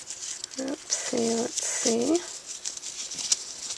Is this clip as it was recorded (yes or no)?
yes